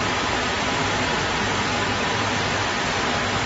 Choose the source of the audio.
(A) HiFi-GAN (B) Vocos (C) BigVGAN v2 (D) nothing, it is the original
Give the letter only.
D